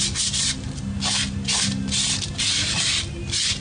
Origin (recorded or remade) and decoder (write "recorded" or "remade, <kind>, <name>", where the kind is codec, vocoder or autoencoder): recorded